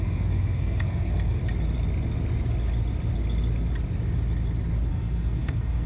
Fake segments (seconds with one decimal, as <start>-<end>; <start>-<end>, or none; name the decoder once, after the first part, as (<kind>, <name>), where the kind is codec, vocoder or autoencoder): 0.0-1.4 (codec, SNAC); 4.9-5.9